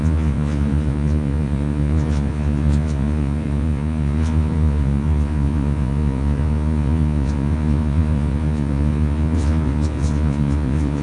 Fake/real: fake